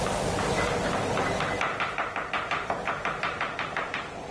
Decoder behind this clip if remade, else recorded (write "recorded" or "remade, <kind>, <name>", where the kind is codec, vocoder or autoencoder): recorded